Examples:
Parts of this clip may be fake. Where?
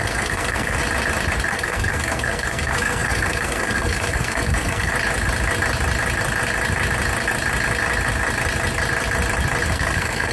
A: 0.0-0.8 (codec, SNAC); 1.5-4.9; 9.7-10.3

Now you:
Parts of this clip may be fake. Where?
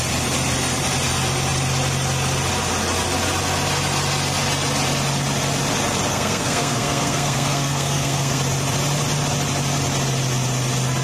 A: 6.1-8.4 (codec, SNAC)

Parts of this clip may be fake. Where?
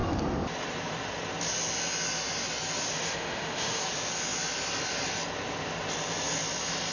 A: 2.9-3.8 (autoencoder, DAC-VAE)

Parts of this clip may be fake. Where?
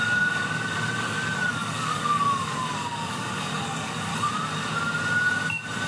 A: 0.0-4.1 (codec, DAC)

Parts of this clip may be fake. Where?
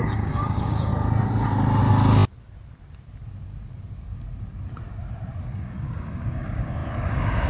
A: 0.0-0.9 (codec, DAC); 5.4-7.5